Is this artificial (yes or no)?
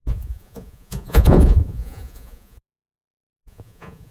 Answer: yes